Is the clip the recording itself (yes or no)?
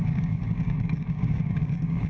no